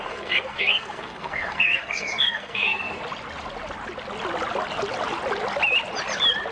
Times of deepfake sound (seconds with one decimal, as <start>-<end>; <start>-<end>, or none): 0.0-3.0